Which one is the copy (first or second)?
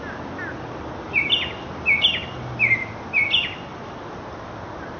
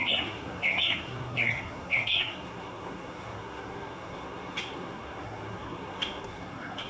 second